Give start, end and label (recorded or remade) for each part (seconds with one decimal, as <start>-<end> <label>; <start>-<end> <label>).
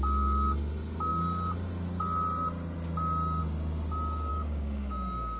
0.0-4.3 recorded; 4.3-5.4 remade